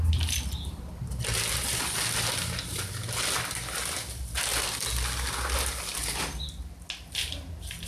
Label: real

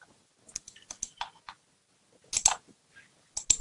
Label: real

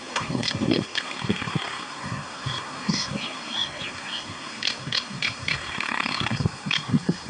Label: fake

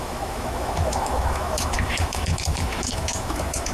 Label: fake